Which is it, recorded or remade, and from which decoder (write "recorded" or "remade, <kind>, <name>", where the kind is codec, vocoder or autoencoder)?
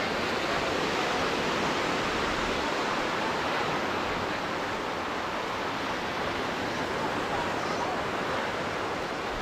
recorded